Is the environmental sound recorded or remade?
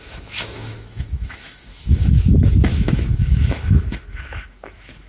remade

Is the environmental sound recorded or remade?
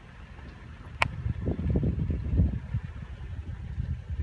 recorded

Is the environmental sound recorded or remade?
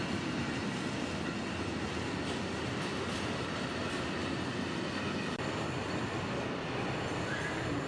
recorded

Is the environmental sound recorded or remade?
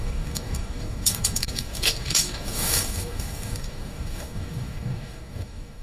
remade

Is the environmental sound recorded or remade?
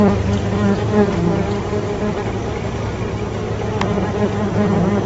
recorded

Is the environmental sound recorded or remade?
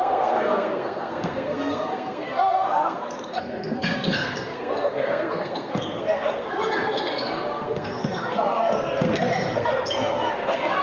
remade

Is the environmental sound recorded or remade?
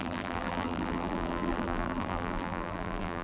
remade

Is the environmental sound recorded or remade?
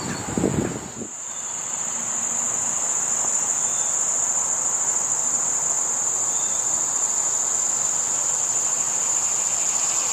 recorded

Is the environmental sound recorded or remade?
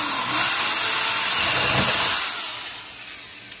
recorded